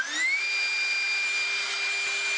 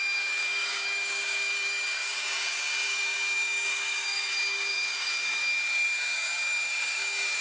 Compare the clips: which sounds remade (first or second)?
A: second